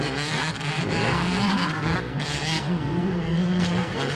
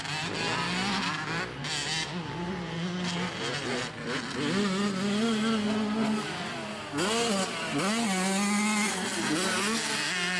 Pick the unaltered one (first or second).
second